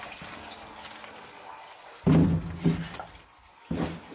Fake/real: real